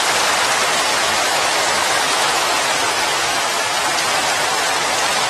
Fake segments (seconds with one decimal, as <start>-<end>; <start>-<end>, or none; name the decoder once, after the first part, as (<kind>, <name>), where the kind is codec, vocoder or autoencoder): 0.9-2.6 (autoencoder, DAC-VAE); 3.2-3.8